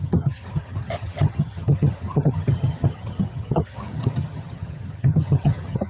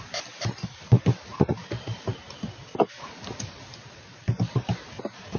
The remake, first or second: first